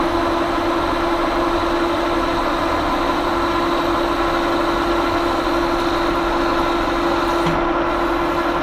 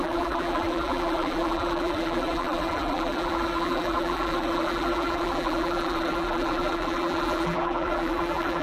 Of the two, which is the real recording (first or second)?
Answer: first